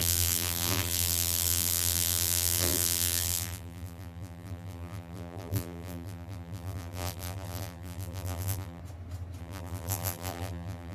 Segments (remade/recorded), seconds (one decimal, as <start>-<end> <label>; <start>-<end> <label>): 0.0-8.8 remade; 8.8-9.4 recorded; 9.4-10.9 remade